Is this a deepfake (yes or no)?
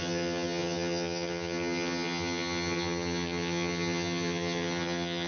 yes